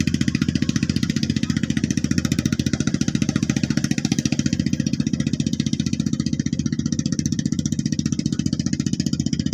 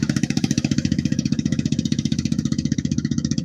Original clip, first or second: first